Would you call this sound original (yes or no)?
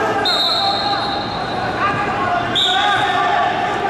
yes